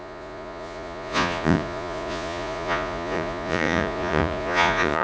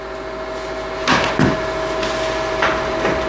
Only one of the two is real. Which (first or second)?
second